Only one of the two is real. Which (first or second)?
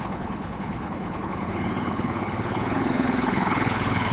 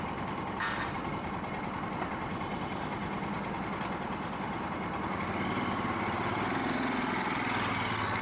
second